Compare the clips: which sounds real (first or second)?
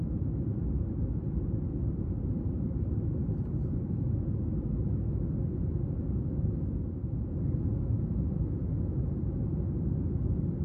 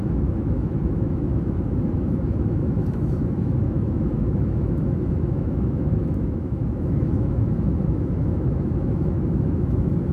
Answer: first